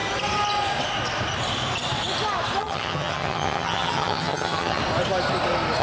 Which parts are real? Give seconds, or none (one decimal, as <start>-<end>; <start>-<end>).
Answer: 0.0-2.6; 4.8-5.8